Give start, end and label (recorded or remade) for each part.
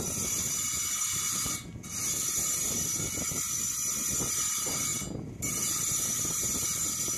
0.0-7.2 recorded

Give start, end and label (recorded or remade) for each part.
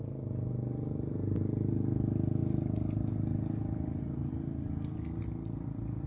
0.0-6.1 recorded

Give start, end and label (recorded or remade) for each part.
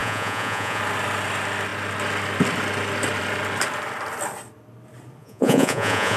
0.0-0.8 remade; 0.8-5.2 recorded; 5.2-6.2 remade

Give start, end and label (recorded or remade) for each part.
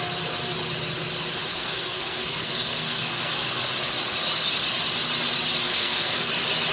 0.0-1.5 recorded; 1.5-3.6 remade; 3.6-5.7 recorded; 5.7-6.3 remade; 6.3-6.7 recorded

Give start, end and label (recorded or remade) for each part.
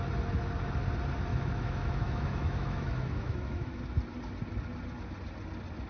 0.0-1.3 recorded; 1.3-3.8 remade; 3.8-5.9 recorded